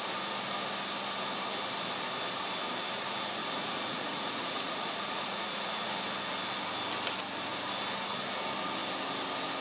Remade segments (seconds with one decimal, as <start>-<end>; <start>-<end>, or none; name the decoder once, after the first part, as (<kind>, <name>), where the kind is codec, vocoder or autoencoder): 3.4-5.9 (vocoder, Vocos)